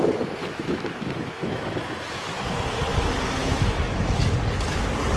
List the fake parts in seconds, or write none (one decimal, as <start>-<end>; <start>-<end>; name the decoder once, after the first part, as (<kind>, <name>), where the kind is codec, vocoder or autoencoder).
0.4-2.3 (autoencoder, DAC-VAE); 3.4-4.2